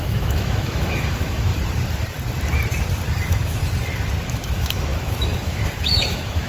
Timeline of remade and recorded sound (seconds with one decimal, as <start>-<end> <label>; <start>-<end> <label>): 0.0-1.5 remade; 1.5-3.2 recorded; 3.2-3.6 remade; 3.6-4.3 recorded; 4.3-6.5 remade